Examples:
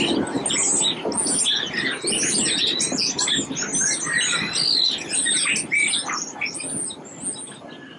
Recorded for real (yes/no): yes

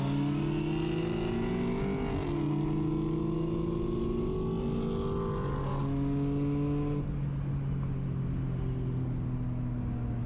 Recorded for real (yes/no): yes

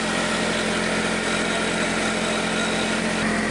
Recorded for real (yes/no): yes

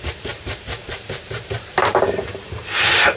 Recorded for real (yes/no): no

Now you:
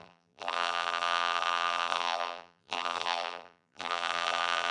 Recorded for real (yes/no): no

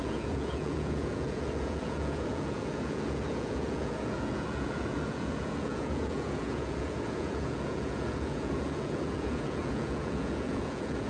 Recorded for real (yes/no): no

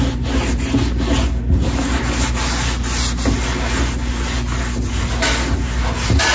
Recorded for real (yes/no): yes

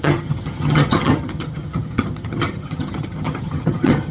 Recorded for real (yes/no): no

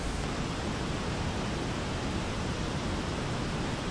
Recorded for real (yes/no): yes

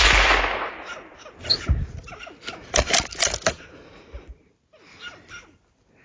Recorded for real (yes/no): yes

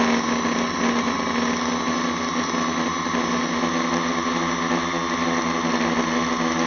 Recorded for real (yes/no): yes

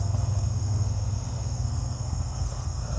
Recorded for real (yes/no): no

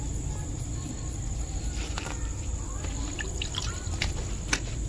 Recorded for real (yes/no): yes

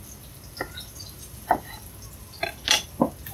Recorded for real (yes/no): yes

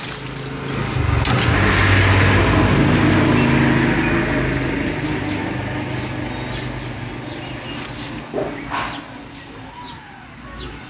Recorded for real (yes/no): yes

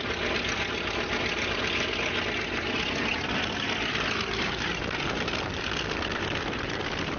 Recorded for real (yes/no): yes